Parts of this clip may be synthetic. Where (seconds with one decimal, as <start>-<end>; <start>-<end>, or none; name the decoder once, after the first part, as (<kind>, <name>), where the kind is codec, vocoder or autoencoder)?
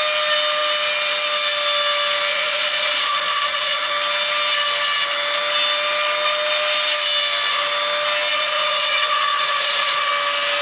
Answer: 2.3-3.9 (vocoder, Vocos); 8.3-10.1